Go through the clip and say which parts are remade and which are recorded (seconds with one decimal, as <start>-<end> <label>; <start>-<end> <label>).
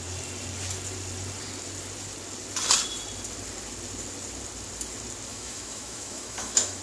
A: 0.0-5.3 recorded; 5.3-6.8 remade